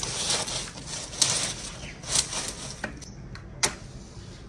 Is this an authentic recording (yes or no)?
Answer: yes